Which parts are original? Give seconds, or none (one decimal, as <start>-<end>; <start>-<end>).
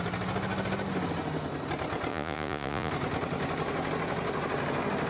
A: 0.0-2.1; 2.9-5.1